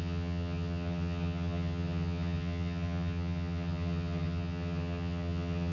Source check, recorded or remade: remade